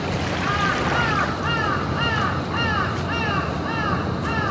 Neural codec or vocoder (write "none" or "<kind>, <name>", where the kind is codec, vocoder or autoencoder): none